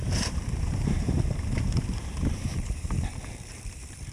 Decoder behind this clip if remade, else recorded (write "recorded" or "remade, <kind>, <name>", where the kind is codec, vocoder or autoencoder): remade, vocoder, BigVGAN v2